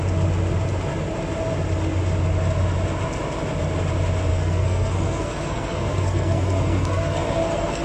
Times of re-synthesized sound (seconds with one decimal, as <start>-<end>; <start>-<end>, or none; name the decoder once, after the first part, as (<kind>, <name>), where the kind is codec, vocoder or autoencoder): 4.3-7.8 (codec, SNAC)